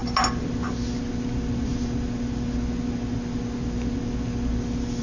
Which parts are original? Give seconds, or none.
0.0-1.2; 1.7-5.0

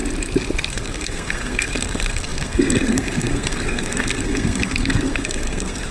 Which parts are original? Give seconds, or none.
0.0-0.7

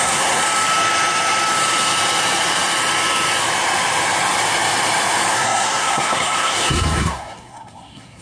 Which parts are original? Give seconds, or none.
0.4-5.3

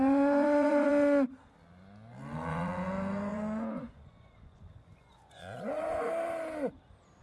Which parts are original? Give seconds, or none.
0.9-2.5; 6.1-7.2

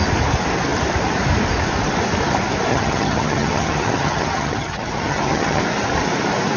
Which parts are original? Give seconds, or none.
0.0-2.7; 5.6-6.6

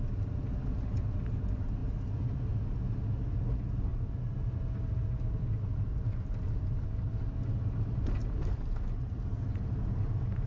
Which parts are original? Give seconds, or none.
0.0-10.5